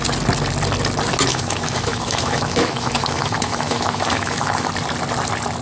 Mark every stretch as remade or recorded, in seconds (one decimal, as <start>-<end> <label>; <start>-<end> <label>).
0.0-1.3 recorded; 1.3-4.7 remade; 4.7-5.6 recorded

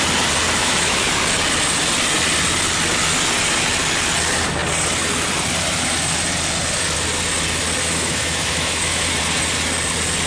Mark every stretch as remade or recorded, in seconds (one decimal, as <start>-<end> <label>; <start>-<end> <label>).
0.0-0.6 recorded; 0.6-1.1 remade; 1.1-7.8 recorded; 7.8-9.2 remade; 9.2-10.3 recorded

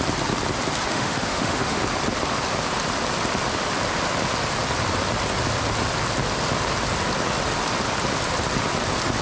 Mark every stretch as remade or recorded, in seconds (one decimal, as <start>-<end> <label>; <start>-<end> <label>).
0.0-0.9 recorded; 0.9-1.8 remade; 1.8-9.2 recorded

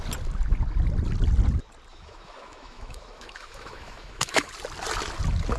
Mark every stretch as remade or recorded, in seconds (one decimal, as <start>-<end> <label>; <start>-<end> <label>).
0.0-1.9 recorded; 1.9-4.5 remade; 4.5-5.6 recorded

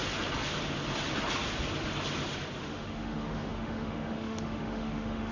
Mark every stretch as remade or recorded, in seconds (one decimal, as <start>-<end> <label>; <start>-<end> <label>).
0.0-2.6 recorded; 2.6-5.3 remade

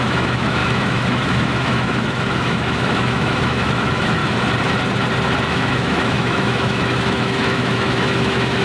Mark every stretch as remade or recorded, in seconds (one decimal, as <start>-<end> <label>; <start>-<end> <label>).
0.0-4.2 remade; 4.2-5.5 recorded; 5.5-8.6 remade

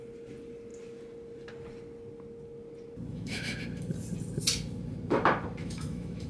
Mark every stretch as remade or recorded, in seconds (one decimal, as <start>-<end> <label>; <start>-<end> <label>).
0.0-3.1 recorded; 3.1-3.6 remade; 3.6-5.6 recorded; 5.6-6.3 remade

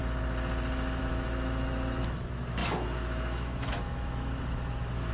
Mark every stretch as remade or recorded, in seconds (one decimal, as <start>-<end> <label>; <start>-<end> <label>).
0.0-1.0 recorded; 1.0-5.1 remade